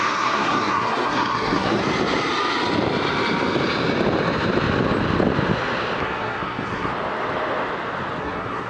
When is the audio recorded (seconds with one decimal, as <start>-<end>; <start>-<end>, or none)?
1.8-6.0; 6.9-8.2